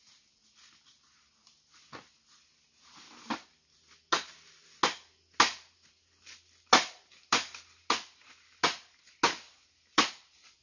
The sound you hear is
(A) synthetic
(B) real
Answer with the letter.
B